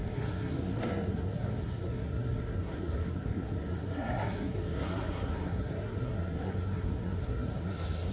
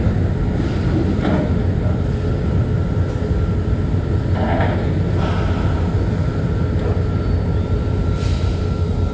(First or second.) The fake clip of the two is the first